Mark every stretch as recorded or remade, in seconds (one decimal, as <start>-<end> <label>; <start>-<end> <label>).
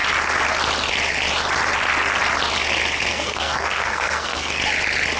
0.0-3.1 recorded; 3.1-4.6 remade; 4.6-5.2 recorded